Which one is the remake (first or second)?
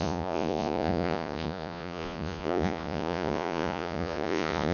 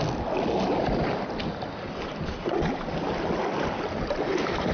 first